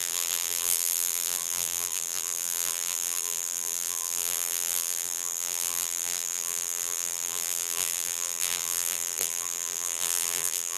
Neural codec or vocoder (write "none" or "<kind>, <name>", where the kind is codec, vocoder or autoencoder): vocoder, BigVGAN v2